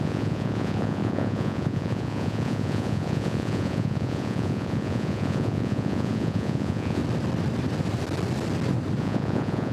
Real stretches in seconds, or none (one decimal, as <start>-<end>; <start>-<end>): 7.0-9.0